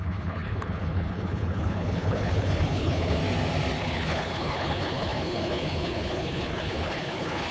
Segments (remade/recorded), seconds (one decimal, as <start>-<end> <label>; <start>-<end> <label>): 0.0-3.2 remade; 3.2-3.8 recorded; 3.8-7.5 remade